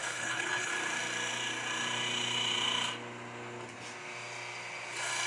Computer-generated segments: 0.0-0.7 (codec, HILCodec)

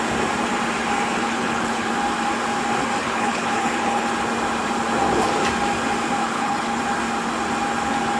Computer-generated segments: 1.2-1.9 (codec, HILCodec); 3.0-4.1; 6.2-6.8

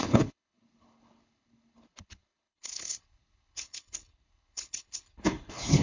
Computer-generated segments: 0.0-5.8 (codec, HILCodec)

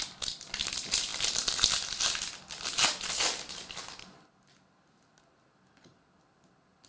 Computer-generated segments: none

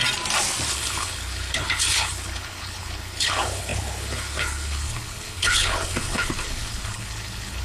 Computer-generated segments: 0.7-7.6 (codec, HILCodec)

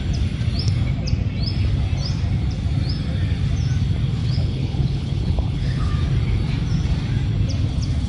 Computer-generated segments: 4.2-5.9 (codec, HILCodec)

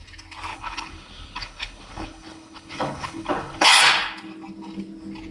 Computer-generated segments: 0.5-3.7 (codec, HILCodec)

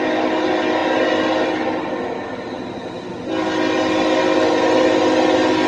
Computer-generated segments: none